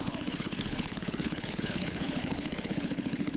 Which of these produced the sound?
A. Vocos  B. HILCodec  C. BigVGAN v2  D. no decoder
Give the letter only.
B